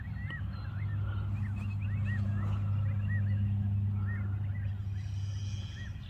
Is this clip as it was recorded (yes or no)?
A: yes